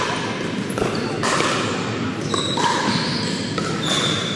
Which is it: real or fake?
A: real